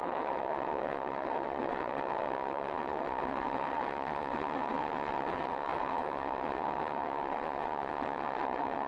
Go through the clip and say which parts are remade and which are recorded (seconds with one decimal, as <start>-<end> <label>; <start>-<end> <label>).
0.0-8.9 remade